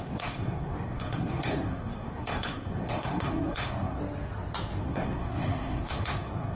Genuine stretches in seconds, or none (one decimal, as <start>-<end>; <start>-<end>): 4.0-4.8